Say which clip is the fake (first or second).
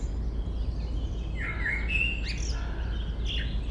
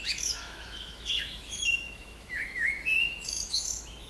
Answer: second